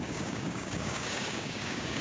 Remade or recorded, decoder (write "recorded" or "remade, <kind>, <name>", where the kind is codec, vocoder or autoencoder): remade, codec, DAC